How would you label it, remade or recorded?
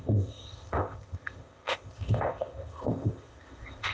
remade